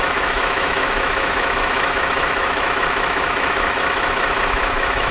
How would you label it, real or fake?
fake